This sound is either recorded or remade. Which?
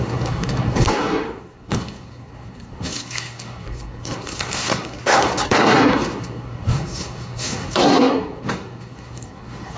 remade